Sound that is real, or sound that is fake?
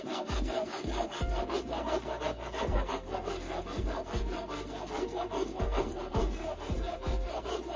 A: fake